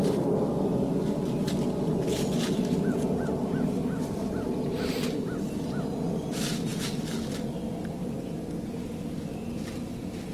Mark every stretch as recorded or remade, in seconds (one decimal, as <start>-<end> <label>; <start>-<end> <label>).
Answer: 0.0-10.3 recorded